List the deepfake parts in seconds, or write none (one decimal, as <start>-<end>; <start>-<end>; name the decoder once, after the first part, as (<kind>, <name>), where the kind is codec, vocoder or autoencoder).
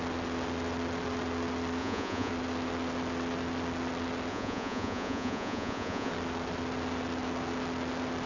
1.8-2.3 (vocoder, Vocos); 4.3-6.1